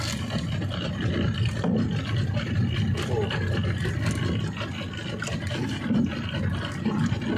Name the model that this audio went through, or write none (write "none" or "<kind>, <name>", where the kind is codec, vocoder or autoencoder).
none